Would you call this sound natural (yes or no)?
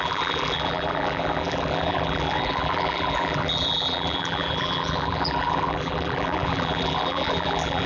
no